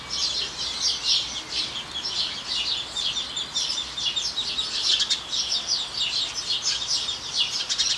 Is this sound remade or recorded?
recorded